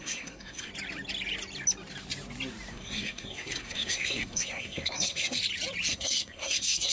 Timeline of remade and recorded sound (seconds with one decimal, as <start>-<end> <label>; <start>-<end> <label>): 0.0-0.7 remade; 0.7-2.7 recorded; 2.7-5.4 remade; 5.4-5.9 recorded; 5.9-6.9 remade